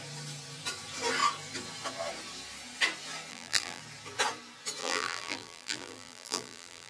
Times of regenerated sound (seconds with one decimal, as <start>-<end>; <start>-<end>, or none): 3.3-3.8; 4.8-6.9